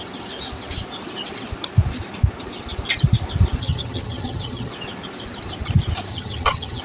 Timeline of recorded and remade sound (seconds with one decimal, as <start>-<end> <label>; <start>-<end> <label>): 0.0-3.6 recorded; 3.6-4.7 remade; 4.7-6.1 recorded; 6.1-6.8 remade